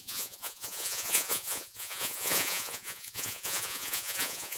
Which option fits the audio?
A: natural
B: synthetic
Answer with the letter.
B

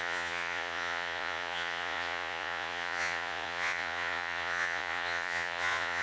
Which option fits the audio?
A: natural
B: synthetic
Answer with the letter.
B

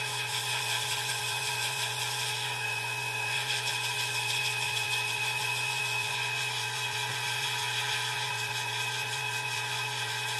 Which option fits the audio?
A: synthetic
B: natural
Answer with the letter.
A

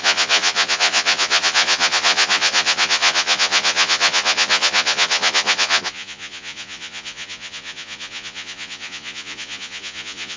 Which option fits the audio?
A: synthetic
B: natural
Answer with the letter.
A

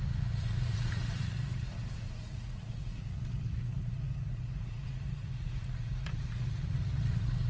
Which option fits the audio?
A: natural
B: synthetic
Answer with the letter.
B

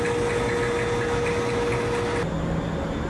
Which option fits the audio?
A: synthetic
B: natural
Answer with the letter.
B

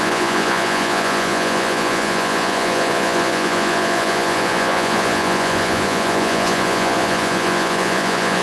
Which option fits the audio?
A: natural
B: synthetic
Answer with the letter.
B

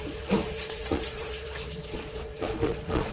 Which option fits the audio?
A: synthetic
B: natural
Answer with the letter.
A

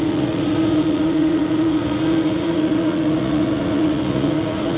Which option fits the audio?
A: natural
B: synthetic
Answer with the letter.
B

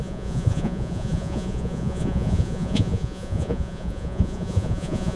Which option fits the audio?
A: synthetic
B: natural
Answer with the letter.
A